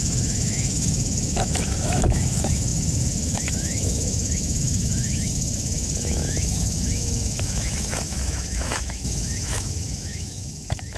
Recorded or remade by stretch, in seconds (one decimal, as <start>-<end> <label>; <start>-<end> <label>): 0.0-11.0 remade